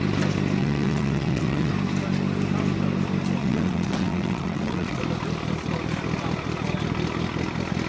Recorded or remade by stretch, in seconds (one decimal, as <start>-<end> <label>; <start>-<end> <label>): 0.0-0.6 recorded; 0.6-1.7 remade; 1.7-3.4 recorded; 3.4-5.0 remade; 5.0-7.9 recorded